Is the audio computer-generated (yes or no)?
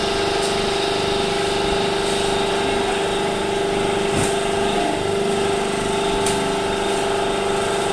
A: no